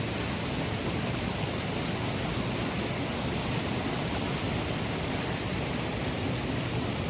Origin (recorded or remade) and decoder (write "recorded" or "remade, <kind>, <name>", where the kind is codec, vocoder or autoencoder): recorded